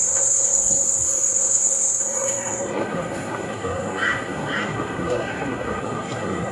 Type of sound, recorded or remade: remade